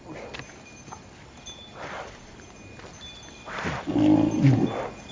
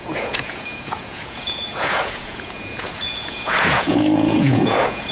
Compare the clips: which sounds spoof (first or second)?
second